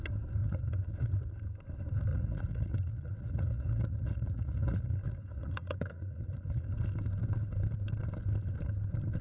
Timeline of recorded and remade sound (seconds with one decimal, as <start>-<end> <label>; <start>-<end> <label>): 0.0-0.4 recorded; 0.4-1.3 remade; 1.3-2.1 recorded; 2.1-6.7 remade; 6.7-9.2 recorded